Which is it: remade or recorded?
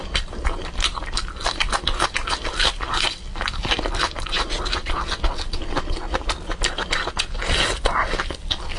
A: recorded